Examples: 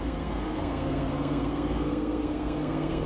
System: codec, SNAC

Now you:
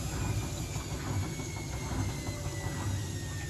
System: none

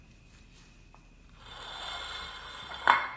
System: none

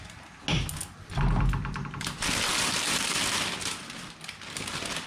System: none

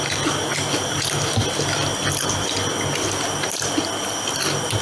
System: none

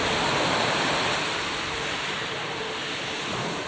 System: vocoder, BigVGAN v2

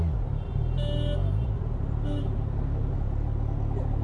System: none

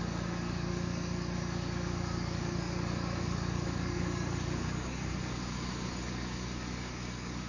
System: codec, DAC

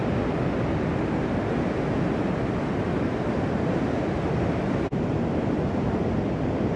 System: none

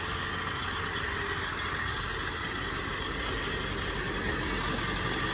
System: none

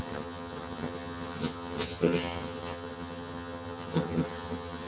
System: vocoder, HiFi-GAN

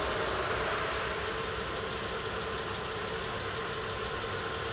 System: none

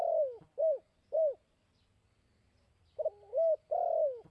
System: none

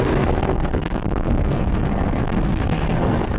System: codec, SNAC